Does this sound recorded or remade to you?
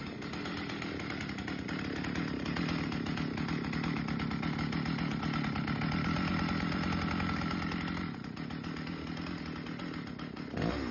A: recorded